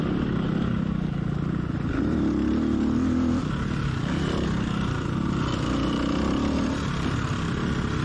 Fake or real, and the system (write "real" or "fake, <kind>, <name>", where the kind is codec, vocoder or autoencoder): real